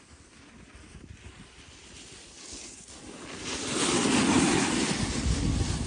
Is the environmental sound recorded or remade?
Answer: recorded